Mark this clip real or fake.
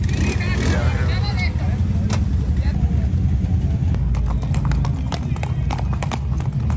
real